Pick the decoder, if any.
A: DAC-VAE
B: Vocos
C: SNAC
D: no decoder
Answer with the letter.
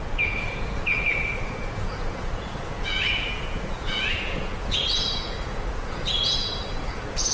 B